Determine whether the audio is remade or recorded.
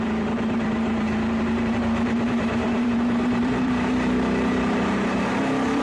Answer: remade